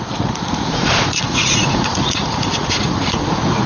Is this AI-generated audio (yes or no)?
yes